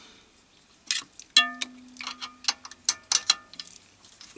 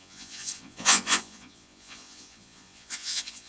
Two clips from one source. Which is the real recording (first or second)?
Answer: first